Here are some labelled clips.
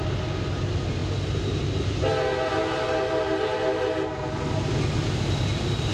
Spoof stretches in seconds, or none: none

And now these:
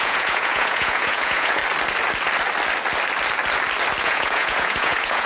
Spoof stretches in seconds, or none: 0.0-1.6 (vocoder, Vocos); 4.0-5.3